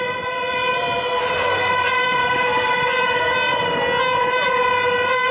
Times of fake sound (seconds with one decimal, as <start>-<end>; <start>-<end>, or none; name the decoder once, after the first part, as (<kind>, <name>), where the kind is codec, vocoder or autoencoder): 2.2-2.7 (codec, DAC)